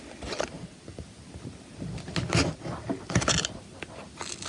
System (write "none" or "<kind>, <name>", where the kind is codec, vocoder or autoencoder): none